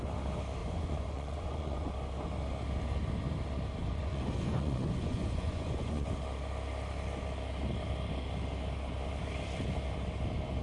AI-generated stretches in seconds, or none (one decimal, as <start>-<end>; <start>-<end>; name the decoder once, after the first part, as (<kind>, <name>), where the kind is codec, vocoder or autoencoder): 0.6-1.9 (vocoder, Vocos); 3.8-6.1